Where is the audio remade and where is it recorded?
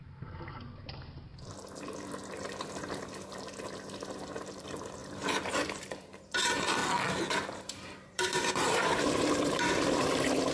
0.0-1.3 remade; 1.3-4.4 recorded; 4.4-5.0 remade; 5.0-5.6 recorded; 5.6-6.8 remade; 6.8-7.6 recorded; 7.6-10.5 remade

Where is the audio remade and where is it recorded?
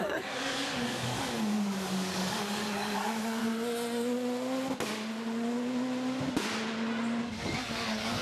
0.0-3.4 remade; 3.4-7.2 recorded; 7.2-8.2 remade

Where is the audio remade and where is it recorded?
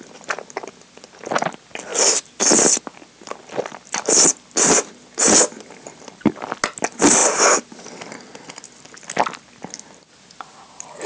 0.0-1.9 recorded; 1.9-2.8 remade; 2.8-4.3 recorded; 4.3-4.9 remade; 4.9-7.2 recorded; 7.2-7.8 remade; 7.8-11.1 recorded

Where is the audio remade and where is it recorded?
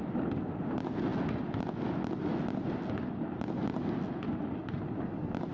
0.0-5.5 recorded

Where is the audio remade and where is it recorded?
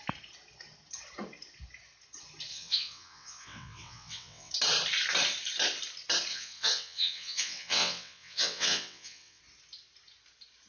0.0-2.5 recorded; 2.5-4.5 remade; 4.5-6.3 recorded; 6.3-9.4 remade; 9.4-10.7 recorded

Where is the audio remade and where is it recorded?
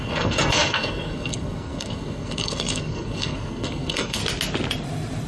0.0-4.2 remade; 4.2-5.3 recorded